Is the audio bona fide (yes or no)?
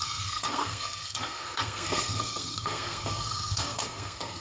no